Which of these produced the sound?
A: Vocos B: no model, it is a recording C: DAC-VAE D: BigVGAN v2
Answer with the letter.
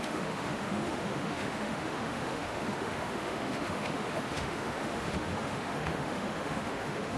C